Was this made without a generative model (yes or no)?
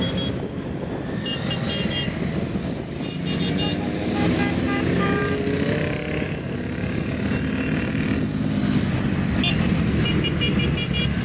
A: yes